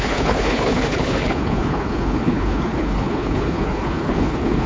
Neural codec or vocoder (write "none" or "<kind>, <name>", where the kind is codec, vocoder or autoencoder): codec, HILCodec